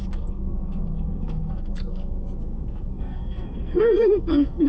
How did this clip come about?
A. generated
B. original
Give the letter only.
A